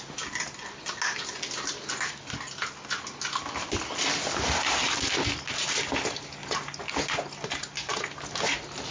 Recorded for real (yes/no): yes